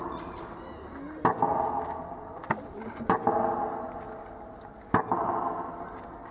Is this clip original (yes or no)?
yes